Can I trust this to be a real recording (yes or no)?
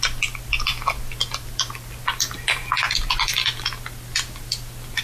yes